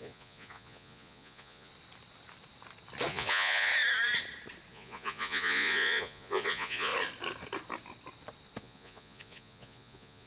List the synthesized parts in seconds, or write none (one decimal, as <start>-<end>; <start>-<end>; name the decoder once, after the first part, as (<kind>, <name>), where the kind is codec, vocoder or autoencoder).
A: 0.0-1.7 (vocoder, Vocos); 3.1-3.7; 4.7-6.9; 8.6-10.3